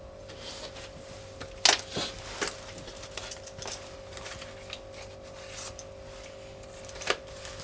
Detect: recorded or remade recorded